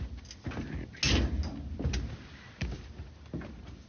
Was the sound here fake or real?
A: real